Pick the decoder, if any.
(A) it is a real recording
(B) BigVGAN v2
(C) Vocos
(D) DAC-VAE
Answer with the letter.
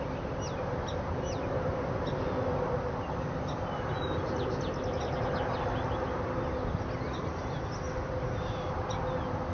A